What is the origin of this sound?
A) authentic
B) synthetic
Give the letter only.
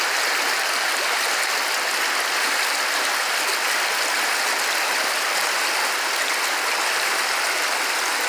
A